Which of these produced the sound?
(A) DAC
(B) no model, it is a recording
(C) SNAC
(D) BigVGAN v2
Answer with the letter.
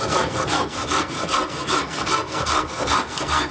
C